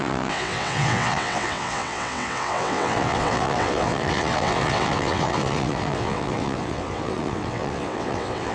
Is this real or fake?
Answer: fake